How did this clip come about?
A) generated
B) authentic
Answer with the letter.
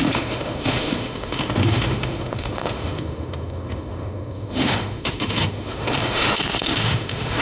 A